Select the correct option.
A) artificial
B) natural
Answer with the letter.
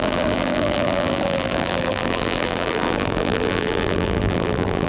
A